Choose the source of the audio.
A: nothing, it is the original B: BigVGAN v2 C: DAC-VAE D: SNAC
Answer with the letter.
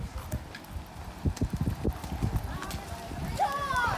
A